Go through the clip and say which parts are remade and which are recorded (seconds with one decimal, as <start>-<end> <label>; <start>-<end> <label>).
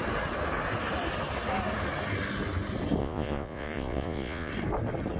0.0-3.0 recorded; 3.0-4.5 remade; 4.5-5.2 recorded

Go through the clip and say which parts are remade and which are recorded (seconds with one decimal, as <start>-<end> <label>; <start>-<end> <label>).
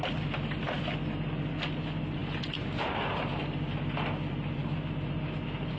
0.0-5.8 recorded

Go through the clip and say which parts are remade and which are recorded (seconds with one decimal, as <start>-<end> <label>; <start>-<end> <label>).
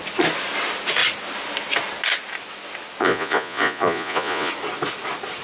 0.0-3.0 recorded; 3.0-4.5 remade; 4.5-5.4 recorded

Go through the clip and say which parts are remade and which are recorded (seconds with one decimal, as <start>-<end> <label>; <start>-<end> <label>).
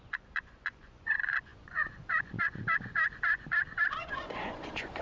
0.0-5.0 remade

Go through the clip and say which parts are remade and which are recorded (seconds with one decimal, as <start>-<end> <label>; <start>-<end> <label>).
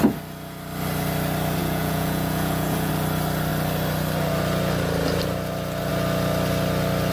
0.0-1.6 recorded; 1.6-2.9 remade; 2.9-7.1 recorded